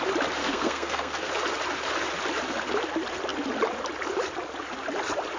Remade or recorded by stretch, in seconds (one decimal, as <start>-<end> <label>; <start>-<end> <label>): 0.0-0.4 recorded; 0.4-1.3 remade; 1.3-5.4 recorded